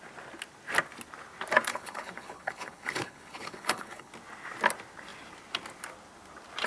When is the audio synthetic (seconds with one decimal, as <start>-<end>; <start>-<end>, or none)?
1.7-4.1